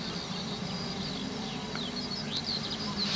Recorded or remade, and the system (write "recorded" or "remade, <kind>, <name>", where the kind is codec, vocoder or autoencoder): recorded